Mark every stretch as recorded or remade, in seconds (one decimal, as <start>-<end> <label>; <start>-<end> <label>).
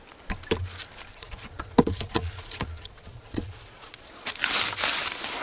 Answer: 0.0-1.1 recorded; 1.1-4.3 remade; 4.3-5.4 recorded